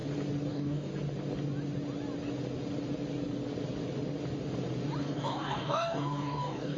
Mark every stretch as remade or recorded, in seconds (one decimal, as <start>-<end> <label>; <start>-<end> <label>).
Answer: 0.0-0.5 recorded; 0.5-0.9 remade; 0.9-5.0 recorded; 5.0-6.8 remade

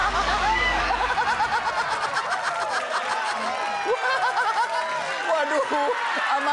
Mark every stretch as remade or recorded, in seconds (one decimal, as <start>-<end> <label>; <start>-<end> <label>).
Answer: 0.0-1.1 remade; 1.1-6.5 recorded

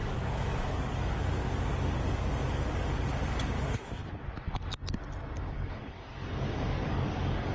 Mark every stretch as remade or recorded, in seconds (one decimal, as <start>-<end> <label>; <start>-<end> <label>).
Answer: 0.0-4.0 remade; 4.0-5.4 recorded; 5.4-7.5 remade

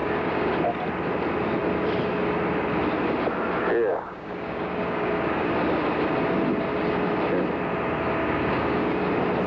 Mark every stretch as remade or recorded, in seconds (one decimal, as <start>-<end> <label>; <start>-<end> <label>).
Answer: 0.0-0.5 remade; 0.5-3.9 recorded; 3.9-5.5 remade; 5.5-8.2 recorded; 8.2-9.0 remade; 9.0-9.5 recorded

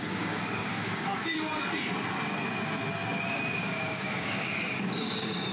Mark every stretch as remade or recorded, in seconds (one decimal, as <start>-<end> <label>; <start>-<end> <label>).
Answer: 0.0-1.5 remade; 1.5-3.3 recorded; 3.3-5.5 remade

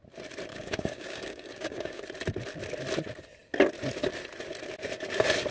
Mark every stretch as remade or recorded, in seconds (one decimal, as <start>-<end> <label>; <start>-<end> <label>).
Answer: 0.0-0.5 recorded; 0.5-2.0 remade; 2.0-5.5 recorded